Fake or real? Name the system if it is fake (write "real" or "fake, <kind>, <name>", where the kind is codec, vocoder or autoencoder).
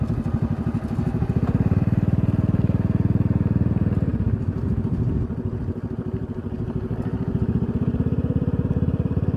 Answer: real